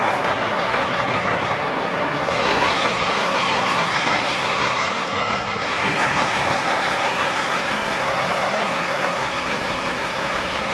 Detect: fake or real fake